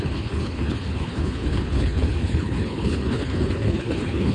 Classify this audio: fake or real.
fake